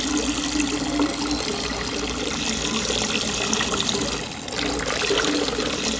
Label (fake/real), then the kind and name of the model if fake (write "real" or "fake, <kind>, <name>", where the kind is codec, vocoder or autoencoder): real